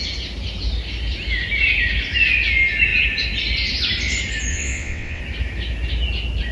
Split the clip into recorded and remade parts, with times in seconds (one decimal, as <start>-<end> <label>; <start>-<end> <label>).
0.0-4.5 recorded; 4.5-5.2 remade; 5.2-6.5 recorded